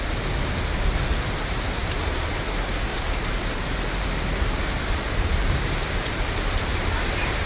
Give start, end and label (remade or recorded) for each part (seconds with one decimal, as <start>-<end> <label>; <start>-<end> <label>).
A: 0.0-1.8 recorded; 1.8-2.3 remade; 2.3-2.9 recorded; 2.9-7.5 remade